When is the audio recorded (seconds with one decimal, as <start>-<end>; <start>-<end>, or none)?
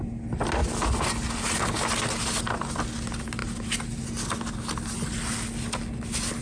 0.0-6.4